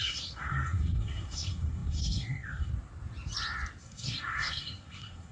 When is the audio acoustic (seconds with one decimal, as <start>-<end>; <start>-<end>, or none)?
2.7-3.8